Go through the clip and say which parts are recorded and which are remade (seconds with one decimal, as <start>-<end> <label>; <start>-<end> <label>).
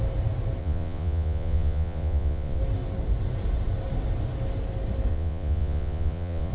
0.0-0.6 recorded; 0.6-2.6 remade; 2.6-5.1 recorded; 5.1-6.5 remade